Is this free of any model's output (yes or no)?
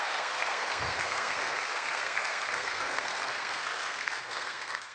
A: no